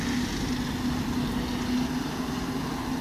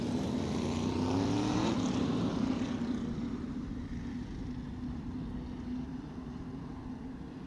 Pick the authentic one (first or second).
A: first